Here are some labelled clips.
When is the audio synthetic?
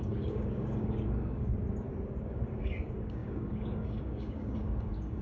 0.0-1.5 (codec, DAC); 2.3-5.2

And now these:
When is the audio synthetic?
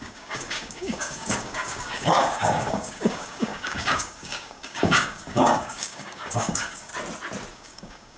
0.0-6.9 (codec, DAC); 7.5-8.2